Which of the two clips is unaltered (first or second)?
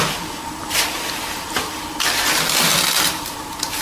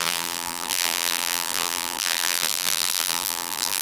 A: first